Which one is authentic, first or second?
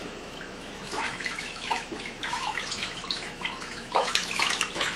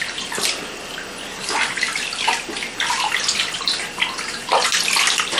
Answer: second